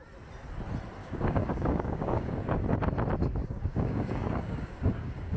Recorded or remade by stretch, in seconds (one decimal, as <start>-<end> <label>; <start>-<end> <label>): 0.0-1.0 recorded; 1.0-2.6 remade; 2.6-3.4 recorded; 3.4-5.4 remade